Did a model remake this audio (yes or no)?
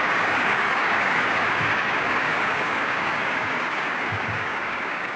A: yes